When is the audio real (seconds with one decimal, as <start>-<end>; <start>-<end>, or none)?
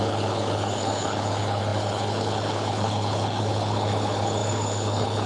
none